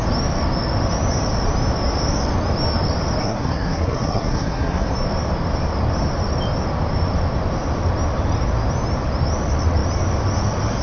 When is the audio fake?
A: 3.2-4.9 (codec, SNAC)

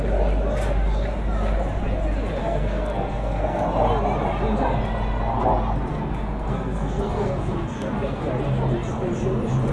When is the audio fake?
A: 2.4-3.6 (codec, SNAC); 5.9-8.3

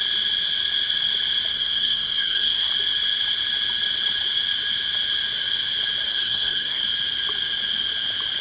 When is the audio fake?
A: 1.5-2.7 (codec, SNAC); 6.1-6.8

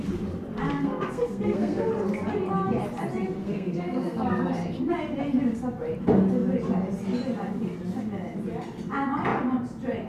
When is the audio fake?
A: 0.7-1.9 (codec, SNAC); 3.4-4.5

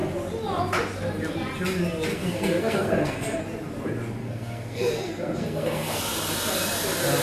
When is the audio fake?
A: 2.1-3.4 (codec, SNAC); 4.2-6.0

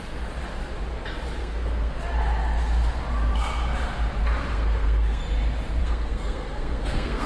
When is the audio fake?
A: 1.4-2.0 (codec, SNAC); 4.5-5.2; 5.8-7.3

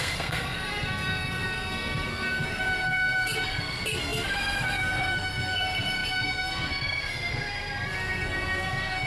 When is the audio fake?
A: 0.0-9.1 (codec, SNAC)